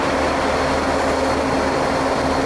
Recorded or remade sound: recorded